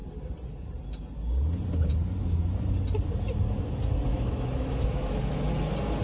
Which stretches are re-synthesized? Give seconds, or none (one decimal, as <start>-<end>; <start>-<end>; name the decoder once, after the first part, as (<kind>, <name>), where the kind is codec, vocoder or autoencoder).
4.1-5.5 (autoencoder, DAC-VAE)